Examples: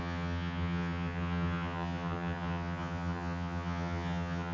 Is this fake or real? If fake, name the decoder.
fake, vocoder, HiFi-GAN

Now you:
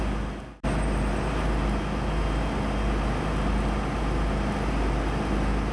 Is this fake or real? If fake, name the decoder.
real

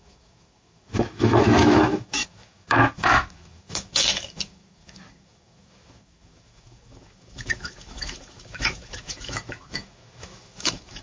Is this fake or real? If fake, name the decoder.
fake, autoencoder, DAC-VAE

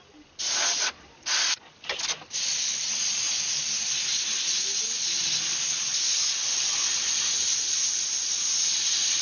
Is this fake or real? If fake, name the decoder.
real